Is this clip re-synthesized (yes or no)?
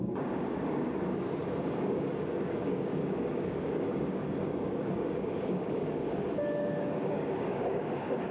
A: yes